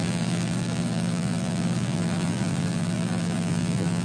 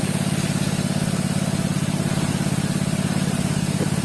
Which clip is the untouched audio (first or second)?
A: second